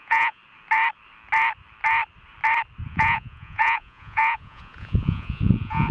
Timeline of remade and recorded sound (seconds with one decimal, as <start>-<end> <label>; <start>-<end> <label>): 0.0-0.4 remade; 0.4-2.9 recorded; 2.9-5.9 remade